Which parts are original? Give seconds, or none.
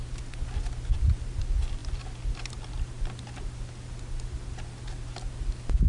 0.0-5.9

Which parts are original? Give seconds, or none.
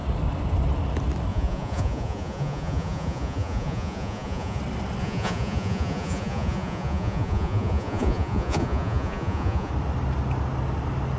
0.0-1.3; 4.6-5.0; 9.7-11.2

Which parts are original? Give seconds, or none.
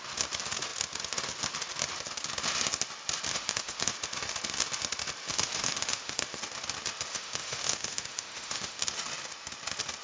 0.0-3.3; 3.9-5.3; 6.2-7.1; 8.8-10.0